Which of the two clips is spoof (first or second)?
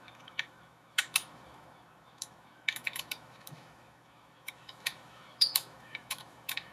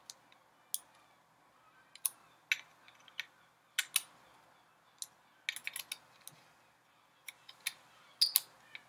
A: first